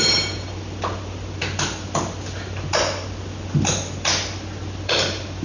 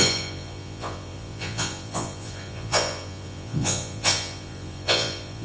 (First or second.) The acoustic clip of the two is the first